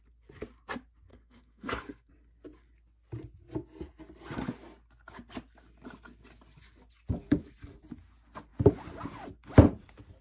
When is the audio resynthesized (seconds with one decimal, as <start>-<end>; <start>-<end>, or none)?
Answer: 1.1-2.1